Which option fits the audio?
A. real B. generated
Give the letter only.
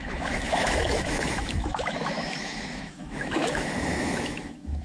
B